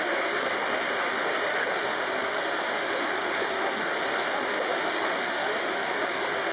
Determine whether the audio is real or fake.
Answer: fake